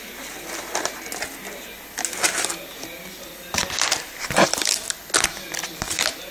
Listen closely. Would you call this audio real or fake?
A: real